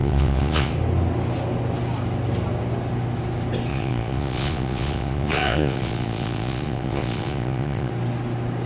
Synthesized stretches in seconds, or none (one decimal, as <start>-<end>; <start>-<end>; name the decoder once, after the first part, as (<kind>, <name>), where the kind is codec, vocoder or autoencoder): 0.0-0.7 (vocoder, Vocos); 3.7-7.9